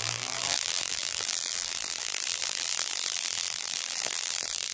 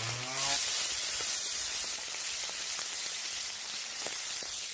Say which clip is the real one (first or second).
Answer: second